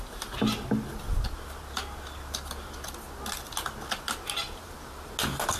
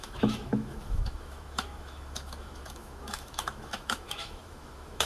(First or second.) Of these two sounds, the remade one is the second